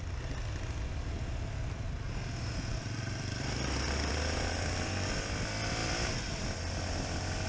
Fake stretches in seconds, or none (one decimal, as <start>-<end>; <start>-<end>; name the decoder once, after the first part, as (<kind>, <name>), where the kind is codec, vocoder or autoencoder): 2.7-4.1 (vocoder, BigVGAN v2); 5.8-6.4